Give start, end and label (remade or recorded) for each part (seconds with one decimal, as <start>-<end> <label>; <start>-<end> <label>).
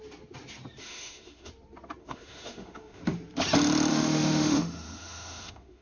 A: 0.0-0.8 recorded; 0.8-1.5 remade; 1.5-2.0 recorded; 2.0-3.0 remade; 3.0-3.9 recorded; 3.9-5.8 remade